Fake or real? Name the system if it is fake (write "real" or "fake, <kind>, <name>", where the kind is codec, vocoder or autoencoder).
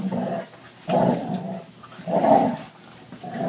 real